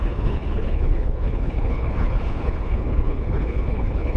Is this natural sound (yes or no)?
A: no